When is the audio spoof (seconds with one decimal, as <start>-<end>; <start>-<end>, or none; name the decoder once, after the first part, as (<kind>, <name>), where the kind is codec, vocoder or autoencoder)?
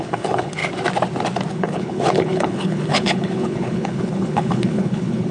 0.0-0.6 (codec, HILCodec); 1.5-5.3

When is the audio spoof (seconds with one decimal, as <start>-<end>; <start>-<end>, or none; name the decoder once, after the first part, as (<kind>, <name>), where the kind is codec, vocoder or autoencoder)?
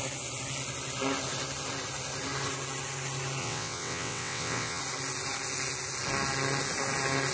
3.4-4.8 (vocoder, WaveNeXt)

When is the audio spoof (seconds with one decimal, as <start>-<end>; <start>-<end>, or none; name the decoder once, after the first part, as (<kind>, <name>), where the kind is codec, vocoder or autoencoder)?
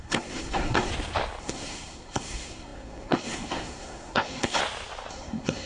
0.0-0.9 (codec, SNAC); 1.4-4.6; 5.1-5.7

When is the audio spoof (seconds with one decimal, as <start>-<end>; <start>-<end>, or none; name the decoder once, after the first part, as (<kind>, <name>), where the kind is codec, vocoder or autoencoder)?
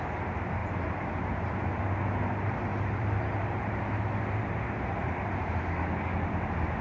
0.6-1.5 (vocoder, BigVGAN v2); 2.7-6.8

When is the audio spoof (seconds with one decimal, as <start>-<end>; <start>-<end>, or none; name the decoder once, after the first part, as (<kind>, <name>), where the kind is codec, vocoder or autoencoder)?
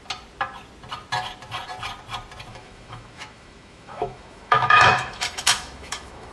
2.5-6.3 (autoencoder, DAC-VAE)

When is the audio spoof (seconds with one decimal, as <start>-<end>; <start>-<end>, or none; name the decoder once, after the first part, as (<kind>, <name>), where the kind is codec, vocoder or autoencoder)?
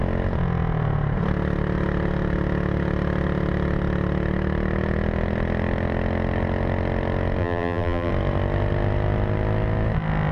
7.4-8.1 (vocoder, BigVGAN v2)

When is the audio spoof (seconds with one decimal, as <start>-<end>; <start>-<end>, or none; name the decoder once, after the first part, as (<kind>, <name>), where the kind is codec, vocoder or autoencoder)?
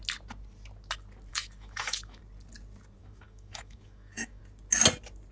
1.3-2.2 (autoencoder, DAC-VAE); 3.0-4.4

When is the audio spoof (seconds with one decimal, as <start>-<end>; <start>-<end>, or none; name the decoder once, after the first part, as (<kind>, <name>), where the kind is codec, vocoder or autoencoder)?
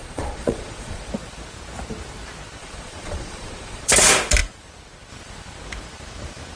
0.0-1.1 (vocoder, Vocos); 2.6-3.9